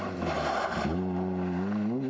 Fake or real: real